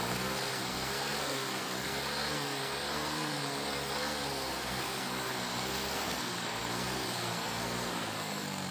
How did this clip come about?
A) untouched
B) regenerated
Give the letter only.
B